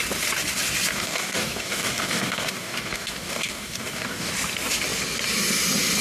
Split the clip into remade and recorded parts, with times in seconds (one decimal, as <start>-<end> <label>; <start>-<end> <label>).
0.0-0.9 recorded; 0.9-4.3 remade; 4.3-6.0 recorded